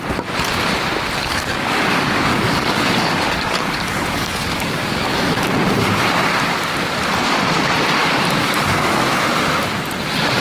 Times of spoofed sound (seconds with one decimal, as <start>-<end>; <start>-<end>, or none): 1.2-5.5; 8.0-9.2